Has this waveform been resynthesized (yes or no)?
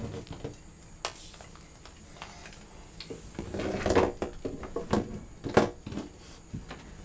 no